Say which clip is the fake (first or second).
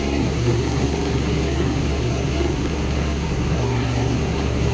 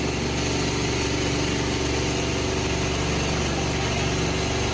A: first